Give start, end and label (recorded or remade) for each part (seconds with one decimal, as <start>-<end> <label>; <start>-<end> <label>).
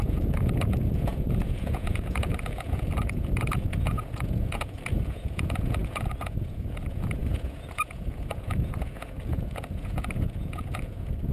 0.0-11.3 remade